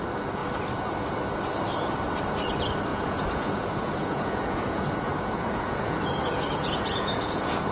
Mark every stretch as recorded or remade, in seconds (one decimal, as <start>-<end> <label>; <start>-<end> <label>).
0.0-2.9 recorded; 2.9-7.7 remade